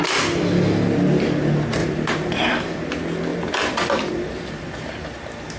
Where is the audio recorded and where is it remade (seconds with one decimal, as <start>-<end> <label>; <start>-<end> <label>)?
0.0-1.8 recorded; 1.8-2.9 remade; 2.9-3.3 recorded; 3.3-5.1 remade; 5.1-5.6 recorded